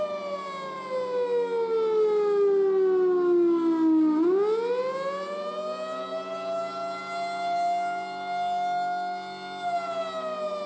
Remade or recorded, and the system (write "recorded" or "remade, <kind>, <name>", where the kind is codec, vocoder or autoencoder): recorded